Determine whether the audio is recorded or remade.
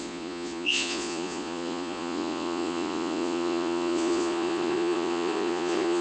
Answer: remade